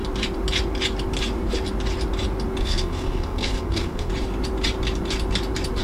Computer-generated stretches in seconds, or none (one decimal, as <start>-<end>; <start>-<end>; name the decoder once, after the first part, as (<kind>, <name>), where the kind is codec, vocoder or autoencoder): 2.6-4.1 (codec, SNAC)

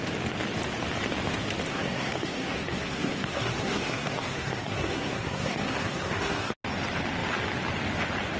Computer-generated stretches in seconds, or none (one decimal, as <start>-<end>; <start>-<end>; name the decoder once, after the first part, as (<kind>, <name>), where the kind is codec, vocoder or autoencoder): 1.7-6.5 (codec, SNAC)

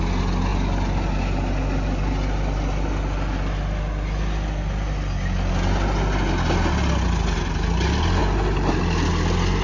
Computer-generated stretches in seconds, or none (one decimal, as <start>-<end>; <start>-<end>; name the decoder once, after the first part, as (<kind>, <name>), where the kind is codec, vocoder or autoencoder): none

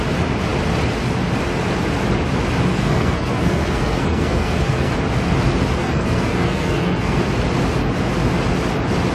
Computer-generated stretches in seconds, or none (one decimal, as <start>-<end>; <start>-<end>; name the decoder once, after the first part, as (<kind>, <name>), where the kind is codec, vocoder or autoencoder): 2.7-4.9 (codec, SNAC); 5.8-7.2

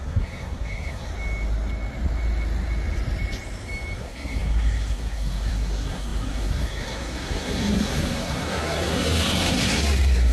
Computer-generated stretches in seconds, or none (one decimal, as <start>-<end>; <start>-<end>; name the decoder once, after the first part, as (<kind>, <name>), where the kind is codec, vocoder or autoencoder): 0.0-1.1 (codec, SNAC); 4.0-10.3

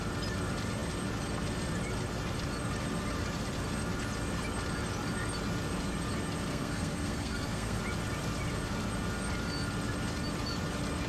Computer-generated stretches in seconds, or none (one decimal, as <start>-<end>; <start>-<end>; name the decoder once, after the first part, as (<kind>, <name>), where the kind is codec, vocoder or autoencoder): 6.5-7.8 (codec, SNAC)

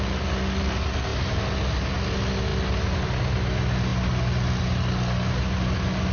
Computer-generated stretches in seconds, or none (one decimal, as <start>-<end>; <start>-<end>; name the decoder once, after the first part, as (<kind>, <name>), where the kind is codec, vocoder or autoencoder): none

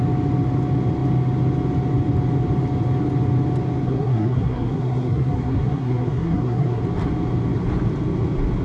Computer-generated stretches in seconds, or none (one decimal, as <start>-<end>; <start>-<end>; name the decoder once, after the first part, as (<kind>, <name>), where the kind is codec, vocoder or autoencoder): 3.8-6.8 (codec, SNAC)